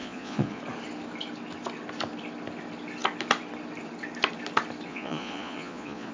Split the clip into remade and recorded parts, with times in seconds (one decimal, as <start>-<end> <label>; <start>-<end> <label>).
0.0-0.6 remade; 0.6-4.9 recorded; 4.9-6.1 remade